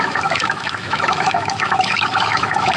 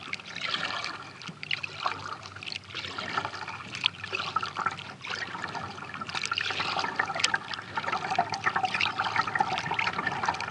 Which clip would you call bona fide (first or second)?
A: second